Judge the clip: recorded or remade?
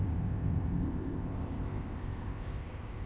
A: remade